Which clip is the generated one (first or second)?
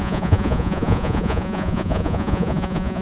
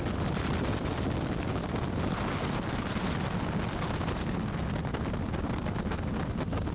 first